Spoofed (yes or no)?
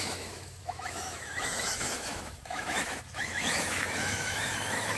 yes